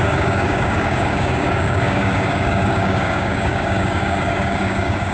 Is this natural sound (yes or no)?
no